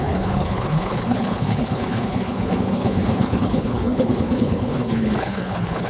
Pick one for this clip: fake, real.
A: fake